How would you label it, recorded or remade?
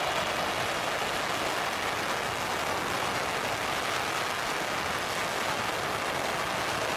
recorded